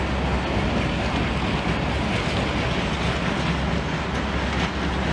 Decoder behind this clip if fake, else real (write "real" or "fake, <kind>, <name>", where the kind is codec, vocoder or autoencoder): real